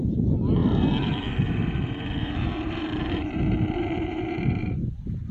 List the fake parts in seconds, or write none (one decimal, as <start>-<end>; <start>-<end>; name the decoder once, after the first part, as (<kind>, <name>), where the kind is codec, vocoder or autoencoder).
0.0-5.3 (vocoder, BigVGAN v2)